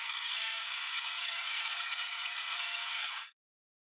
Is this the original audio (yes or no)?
no